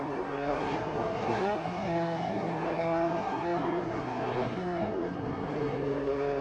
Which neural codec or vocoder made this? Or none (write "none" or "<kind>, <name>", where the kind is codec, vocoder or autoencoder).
codec, SNAC